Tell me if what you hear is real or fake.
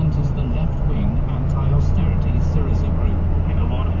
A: real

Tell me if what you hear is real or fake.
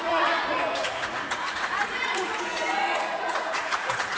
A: fake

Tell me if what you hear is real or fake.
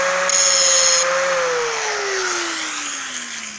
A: real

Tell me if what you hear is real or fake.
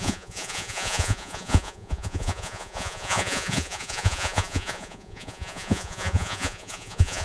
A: fake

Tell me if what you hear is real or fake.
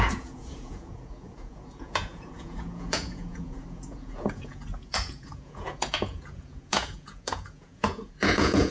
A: fake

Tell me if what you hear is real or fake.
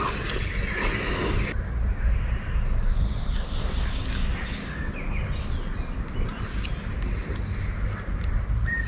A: real